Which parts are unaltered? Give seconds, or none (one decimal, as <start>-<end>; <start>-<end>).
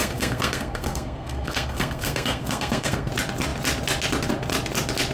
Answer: 3.1-5.1